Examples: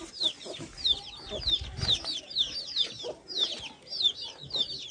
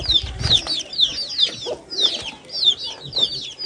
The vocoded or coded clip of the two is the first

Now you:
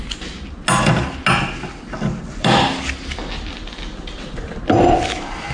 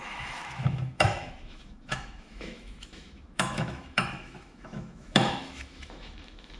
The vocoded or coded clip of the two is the second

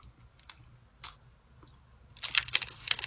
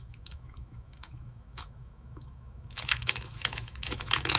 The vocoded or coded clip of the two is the second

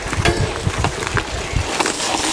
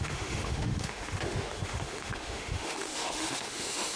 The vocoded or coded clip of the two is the second